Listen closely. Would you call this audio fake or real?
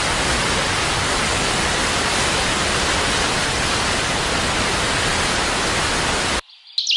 real